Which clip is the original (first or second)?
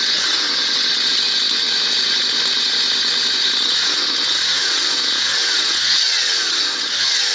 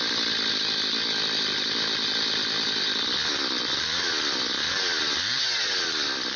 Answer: second